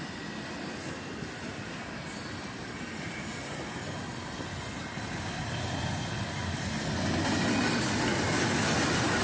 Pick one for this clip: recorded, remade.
recorded